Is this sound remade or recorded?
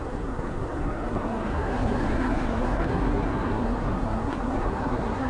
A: remade